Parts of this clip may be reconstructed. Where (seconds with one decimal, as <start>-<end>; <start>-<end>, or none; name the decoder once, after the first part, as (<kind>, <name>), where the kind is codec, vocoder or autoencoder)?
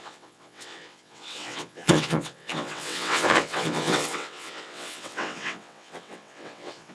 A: 0.0-6.9 (vocoder, WaveNeXt)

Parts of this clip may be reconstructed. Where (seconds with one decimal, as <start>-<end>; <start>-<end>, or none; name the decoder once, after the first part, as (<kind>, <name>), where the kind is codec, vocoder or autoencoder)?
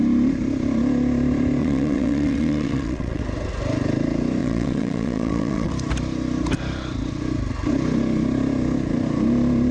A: 1.6-3.2 (vocoder, WaveNeXt); 4.4-5.7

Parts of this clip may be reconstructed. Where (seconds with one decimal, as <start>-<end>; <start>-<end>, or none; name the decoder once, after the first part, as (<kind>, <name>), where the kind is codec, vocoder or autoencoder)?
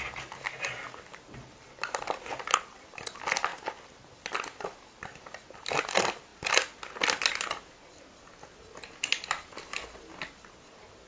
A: none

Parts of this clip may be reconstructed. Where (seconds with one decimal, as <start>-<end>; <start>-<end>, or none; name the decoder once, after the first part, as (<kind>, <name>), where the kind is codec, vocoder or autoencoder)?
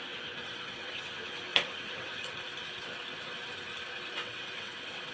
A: 0.4-0.9 (vocoder, WaveNeXt); 1.5-2.3; 4.2-5.1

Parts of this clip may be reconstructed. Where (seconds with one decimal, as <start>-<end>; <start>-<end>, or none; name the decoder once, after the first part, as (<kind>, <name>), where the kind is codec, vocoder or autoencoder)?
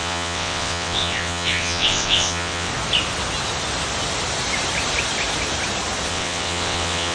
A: 0.0-2.7 (vocoder, WaveNeXt); 6.1-7.1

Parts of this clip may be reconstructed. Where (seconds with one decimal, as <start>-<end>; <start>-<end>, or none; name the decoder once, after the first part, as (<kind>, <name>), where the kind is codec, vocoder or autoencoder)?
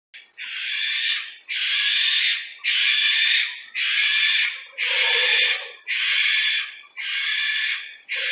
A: none